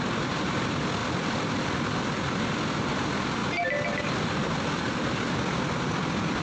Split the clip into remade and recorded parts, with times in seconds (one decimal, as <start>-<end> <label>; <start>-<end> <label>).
0.0-1.0 recorded; 1.0-2.9 remade; 2.9-6.4 recorded